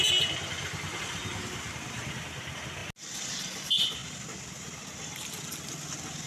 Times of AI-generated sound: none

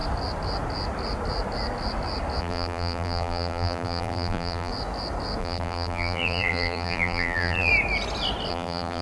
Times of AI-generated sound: 2.4-4.7 (vocoder, BigVGAN v2); 5.4-7.7; 8.5-9.0

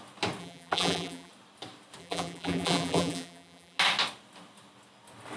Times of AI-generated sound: 0.4-1.3 (vocoder, BigVGAN v2); 2.0-3.8

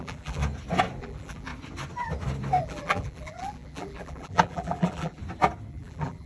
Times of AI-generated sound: 0.0-0.4 (vocoder, BigVGAN v2); 1.0-1.5; 2.6-5.2; 5.7-6.3

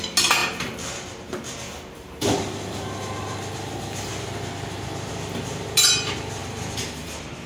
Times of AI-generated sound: 6.4-7.5 (vocoder, BigVGAN v2)

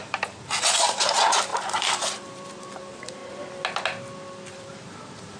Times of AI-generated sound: 0.0-3.2 (vocoder, BigVGAN v2); 4.5-5.4

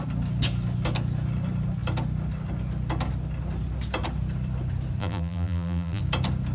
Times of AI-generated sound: 5.0-6.0 (vocoder, BigVGAN v2)